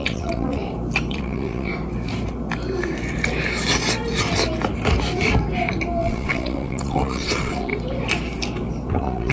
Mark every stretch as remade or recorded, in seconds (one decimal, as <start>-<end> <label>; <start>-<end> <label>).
0.0-0.6 remade; 0.6-1.1 recorded; 1.1-1.7 remade; 1.7-6.0 recorded; 6.0-7.7 remade; 7.7-8.9 recorded; 8.9-9.3 remade